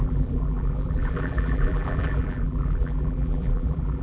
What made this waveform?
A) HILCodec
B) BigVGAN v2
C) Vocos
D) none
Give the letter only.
B